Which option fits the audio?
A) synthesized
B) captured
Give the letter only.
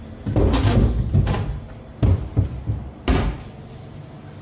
B